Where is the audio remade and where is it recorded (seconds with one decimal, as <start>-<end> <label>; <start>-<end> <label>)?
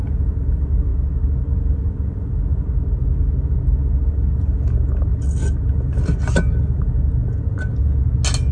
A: 0.0-8.5 recorded